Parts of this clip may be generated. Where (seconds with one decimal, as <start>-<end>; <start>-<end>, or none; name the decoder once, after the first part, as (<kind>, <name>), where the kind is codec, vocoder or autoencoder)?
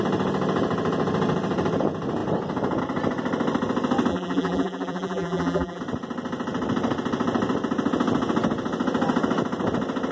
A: 4.1-5.8 (vocoder, BigVGAN v2)